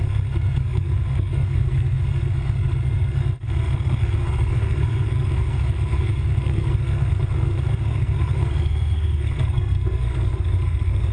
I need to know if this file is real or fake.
fake